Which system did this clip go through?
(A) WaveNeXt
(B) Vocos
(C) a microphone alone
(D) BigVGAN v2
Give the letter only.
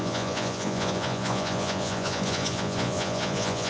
B